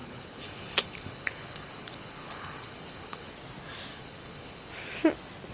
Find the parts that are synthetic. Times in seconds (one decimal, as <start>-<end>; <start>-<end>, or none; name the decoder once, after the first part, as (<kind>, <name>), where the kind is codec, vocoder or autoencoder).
0.0-3.3 (codec, HILCodec); 3.9-4.7